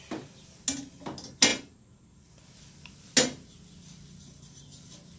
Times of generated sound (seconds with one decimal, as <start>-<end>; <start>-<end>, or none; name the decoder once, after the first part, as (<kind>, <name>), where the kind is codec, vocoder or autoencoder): none